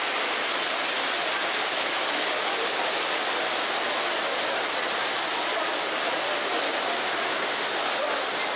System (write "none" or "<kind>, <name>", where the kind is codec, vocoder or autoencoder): none